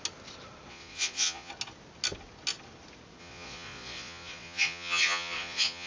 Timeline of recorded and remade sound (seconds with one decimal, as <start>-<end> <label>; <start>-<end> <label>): 0.0-0.7 recorded; 0.7-1.5 remade; 1.5-3.2 recorded; 3.2-5.9 remade